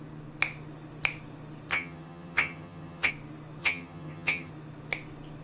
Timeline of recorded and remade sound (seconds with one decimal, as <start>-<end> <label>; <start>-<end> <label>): 0.0-1.7 recorded; 1.7-3.1 remade; 3.1-3.6 recorded; 3.6-4.5 remade; 4.5-5.4 recorded